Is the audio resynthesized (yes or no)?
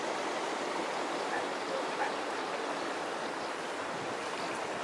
no